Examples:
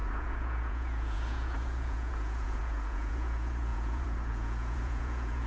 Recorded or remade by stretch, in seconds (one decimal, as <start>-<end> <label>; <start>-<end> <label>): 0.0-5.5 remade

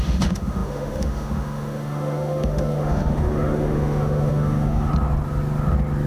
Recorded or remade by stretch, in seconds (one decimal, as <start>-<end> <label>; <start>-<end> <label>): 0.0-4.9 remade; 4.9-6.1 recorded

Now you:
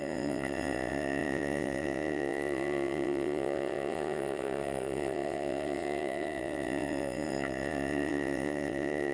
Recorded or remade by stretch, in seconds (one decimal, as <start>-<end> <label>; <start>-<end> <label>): 0.0-9.1 remade